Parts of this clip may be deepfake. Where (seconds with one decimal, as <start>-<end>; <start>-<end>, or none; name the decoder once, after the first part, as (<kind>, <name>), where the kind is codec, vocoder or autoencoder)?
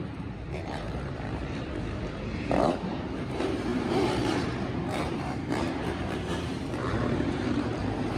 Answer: 0.0-8.2 (vocoder, BigVGAN v2)